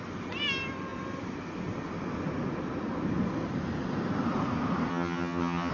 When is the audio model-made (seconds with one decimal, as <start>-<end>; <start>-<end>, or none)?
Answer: 4.9-5.7